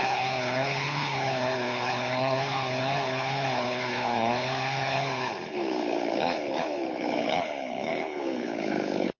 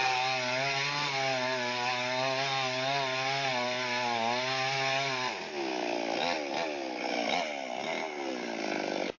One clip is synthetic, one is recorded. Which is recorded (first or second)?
second